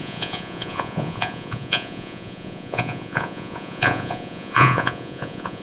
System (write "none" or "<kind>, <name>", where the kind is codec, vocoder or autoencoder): vocoder, Vocos